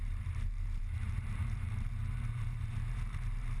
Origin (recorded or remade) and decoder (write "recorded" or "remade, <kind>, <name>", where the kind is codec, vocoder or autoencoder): remade, vocoder, BigVGAN v2